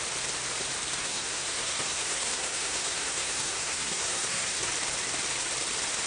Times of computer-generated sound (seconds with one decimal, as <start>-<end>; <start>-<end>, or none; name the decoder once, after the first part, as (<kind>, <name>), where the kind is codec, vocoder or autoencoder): 1.0-4.7 (codec, SNAC)